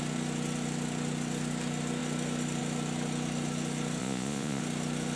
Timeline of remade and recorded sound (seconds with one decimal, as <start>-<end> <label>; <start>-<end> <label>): 0.0-4.0 recorded; 4.0-4.6 remade; 4.6-5.2 recorded